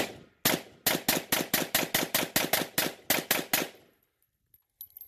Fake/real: real